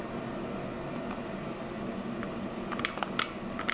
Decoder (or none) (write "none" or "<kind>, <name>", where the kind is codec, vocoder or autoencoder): none